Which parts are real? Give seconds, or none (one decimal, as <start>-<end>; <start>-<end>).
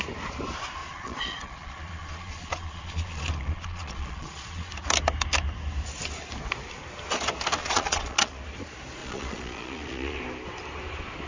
0.0-0.8; 4.7-7.6; 8.4-9.0; 10.2-11.3